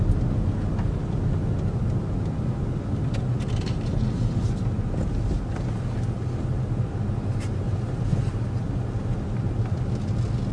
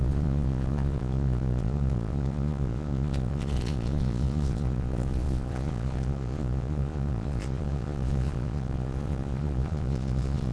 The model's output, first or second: second